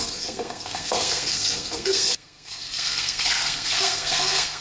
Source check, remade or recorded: remade